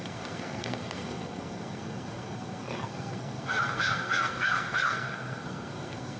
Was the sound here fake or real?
fake